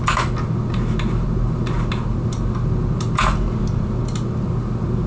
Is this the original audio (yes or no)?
yes